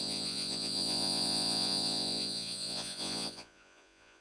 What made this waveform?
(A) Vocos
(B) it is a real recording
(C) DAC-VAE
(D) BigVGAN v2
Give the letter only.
A